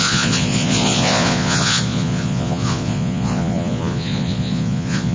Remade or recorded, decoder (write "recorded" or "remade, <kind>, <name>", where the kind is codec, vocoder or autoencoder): remade, vocoder, Vocos